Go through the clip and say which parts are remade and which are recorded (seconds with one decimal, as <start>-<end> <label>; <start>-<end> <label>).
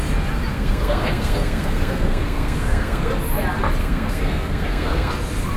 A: 0.0-0.5 recorded; 0.5-3.1 remade; 3.1-3.8 recorded; 3.8-5.1 remade; 5.1-5.6 recorded